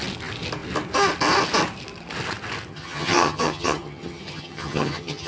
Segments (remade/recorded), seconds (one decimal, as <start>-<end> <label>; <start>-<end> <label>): 0.0-2.7 recorded; 2.7-5.3 remade